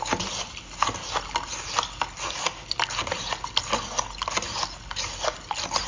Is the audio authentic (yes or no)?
yes